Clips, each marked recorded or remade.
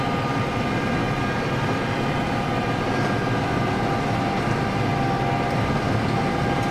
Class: recorded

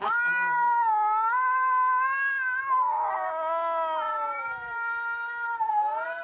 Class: recorded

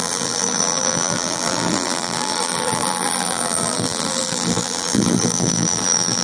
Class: remade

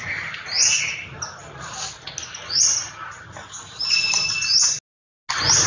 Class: recorded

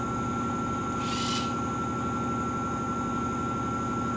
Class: recorded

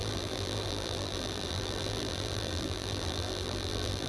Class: remade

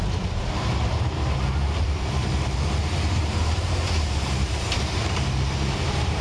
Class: remade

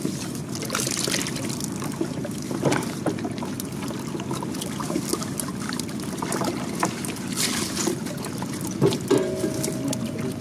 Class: recorded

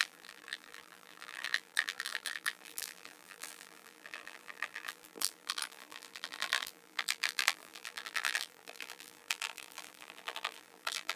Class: remade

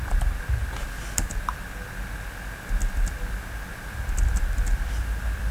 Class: remade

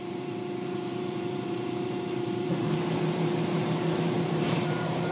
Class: remade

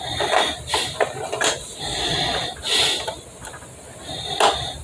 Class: recorded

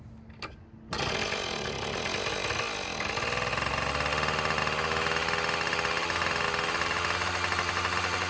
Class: recorded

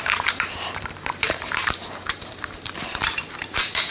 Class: remade